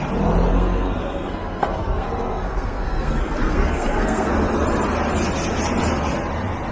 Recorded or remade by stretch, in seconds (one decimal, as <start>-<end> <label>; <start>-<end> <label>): 0.0-0.5 recorded; 0.5-4.3 remade; 4.3-6.7 recorded